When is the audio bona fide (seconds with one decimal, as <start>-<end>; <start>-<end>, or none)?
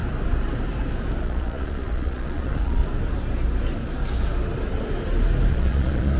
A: 0.0-1.2; 2.8-5.5